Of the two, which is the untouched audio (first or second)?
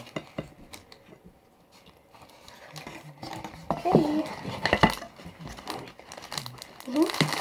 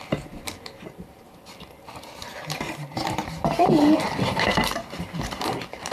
first